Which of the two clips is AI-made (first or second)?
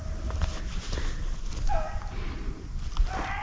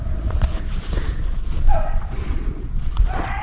second